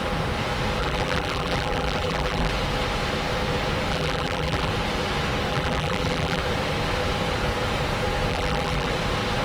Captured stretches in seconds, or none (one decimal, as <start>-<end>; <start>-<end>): 0.0-0.8; 2.5-3.9; 4.7-5.5; 6.4-8.3; 8.9-9.4